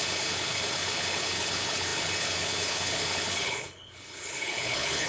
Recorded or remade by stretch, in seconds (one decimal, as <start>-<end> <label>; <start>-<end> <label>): 0.0-5.1 remade